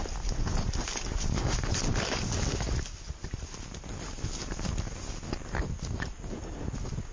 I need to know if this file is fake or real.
real